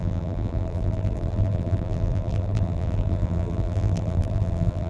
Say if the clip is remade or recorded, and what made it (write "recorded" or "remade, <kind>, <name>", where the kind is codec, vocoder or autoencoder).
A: remade, vocoder, BigVGAN v2